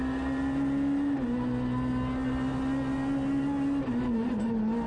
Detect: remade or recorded recorded